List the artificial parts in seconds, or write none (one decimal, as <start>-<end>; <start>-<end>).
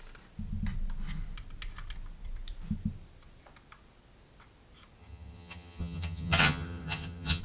5.0-7.4